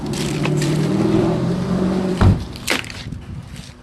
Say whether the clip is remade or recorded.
remade